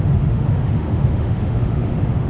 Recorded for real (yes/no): no